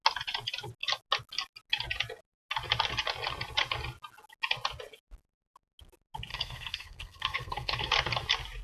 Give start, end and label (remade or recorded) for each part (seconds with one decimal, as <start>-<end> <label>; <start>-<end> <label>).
0.0-6.3 recorded; 6.3-7.9 remade; 7.9-8.6 recorded